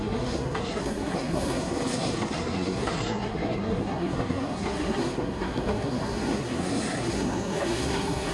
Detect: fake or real fake